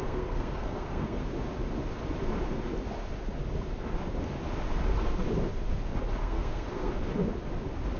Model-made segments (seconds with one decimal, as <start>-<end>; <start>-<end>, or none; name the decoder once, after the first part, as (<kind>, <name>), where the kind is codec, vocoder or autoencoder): 0.0-1.2 (codec, SNAC); 6.2-6.9